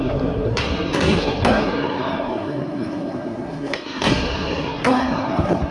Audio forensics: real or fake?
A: fake